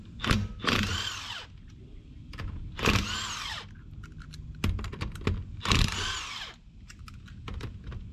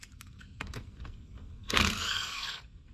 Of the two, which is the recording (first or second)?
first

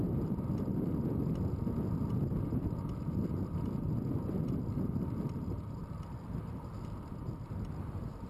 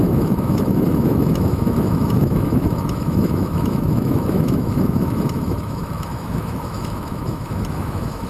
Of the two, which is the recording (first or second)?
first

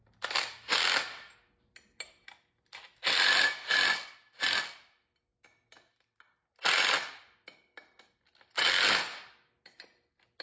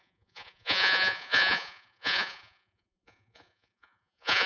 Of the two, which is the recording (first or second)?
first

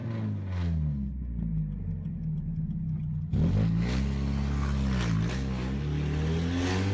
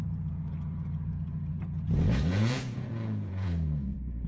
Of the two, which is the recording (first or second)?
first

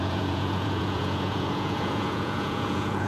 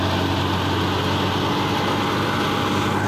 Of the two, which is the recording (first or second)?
second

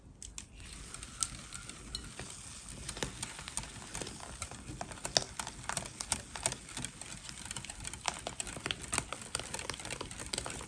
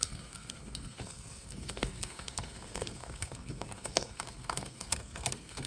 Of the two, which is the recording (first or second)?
first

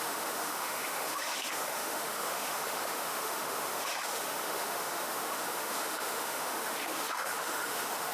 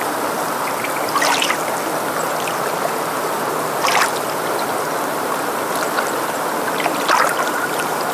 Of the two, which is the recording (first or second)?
second